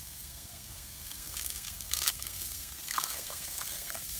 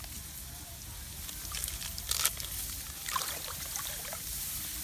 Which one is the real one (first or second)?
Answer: second